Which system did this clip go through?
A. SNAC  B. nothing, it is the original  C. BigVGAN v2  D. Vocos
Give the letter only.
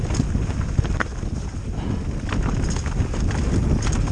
B